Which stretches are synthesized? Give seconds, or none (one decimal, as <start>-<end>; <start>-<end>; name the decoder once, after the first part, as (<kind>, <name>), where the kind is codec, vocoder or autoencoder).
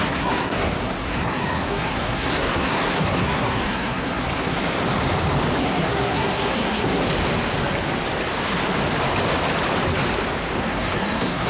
0.0-4.6 (codec, SNAC); 5.6-7.0; 10.6-11.5